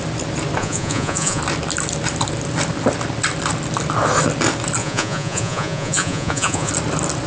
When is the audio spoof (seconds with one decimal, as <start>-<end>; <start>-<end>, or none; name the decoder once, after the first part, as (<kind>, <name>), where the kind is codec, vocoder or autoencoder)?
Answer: 0.6-1.4 (vocoder, Vocos); 4.8-6.7